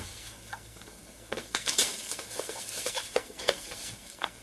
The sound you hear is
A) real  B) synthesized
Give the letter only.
B